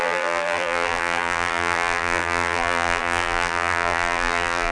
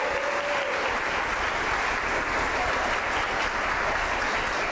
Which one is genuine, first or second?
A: second